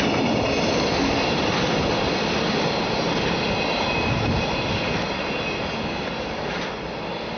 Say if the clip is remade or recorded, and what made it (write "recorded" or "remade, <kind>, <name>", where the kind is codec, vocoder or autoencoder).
recorded